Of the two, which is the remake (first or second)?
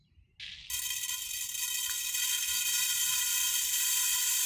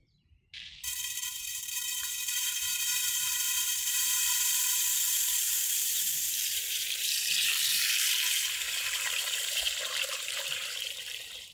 second